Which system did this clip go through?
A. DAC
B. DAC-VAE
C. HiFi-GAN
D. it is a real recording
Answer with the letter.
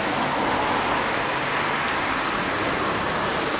D